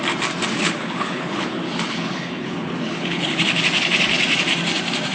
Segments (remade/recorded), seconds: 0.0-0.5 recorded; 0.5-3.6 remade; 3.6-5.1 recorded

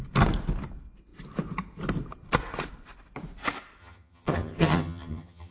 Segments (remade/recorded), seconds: 0.0-3.8 recorded; 3.8-5.5 remade

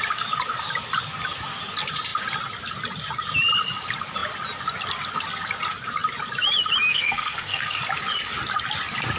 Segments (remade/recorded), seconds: 0.0-6.9 recorded; 6.9-7.8 remade; 7.8-9.2 recorded

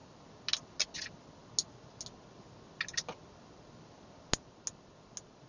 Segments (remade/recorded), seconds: 0.0-5.5 recorded